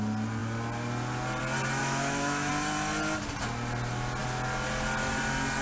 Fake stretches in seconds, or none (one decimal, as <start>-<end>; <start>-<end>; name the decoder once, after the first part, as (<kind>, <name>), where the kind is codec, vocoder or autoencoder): 1.8-2.5 (autoencoder, DAC-VAE)

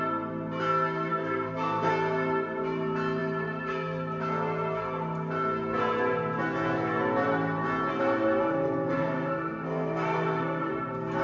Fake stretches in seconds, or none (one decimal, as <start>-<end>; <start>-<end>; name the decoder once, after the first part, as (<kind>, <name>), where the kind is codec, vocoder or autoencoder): 1.1-1.9 (codec, SNAC); 8.4-10.7